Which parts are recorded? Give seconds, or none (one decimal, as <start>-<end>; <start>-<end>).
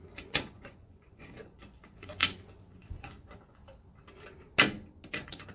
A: 3.6-5.1